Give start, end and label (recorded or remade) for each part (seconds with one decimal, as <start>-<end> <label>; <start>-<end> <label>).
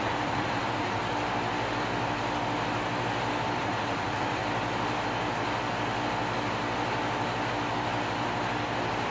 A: 0.0-1.0 remade; 1.0-3.6 recorded; 3.6-4.4 remade; 4.4-9.1 recorded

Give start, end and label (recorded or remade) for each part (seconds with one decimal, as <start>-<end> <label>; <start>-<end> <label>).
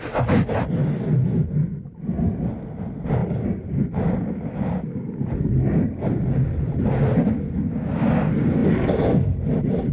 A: 0.0-9.9 recorded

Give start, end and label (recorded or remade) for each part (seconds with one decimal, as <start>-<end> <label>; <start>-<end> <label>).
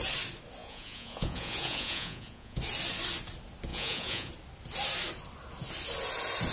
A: 0.0-0.6 recorded; 0.6-2.6 remade; 2.6-3.7 recorded; 3.7-4.3 remade; 4.3-6.5 recorded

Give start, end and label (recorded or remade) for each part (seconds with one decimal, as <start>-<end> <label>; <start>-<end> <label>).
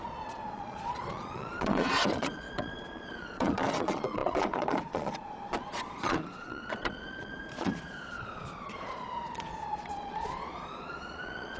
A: 0.0-11.6 remade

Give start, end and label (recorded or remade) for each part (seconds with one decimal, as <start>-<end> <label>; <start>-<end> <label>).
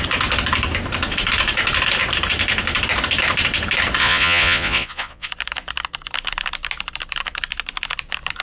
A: 0.0-4.0 recorded; 4.0-5.3 remade; 5.3-8.4 recorded